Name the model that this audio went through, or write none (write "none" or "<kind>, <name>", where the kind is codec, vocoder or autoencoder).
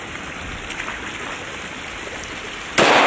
none